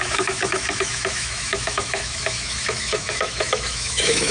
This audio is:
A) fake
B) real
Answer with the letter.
A